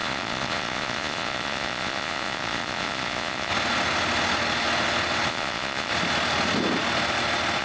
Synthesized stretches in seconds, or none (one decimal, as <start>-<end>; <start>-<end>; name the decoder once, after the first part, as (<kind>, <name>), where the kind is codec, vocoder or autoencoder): 0.0-3.5 (vocoder, Vocos); 5.3-5.9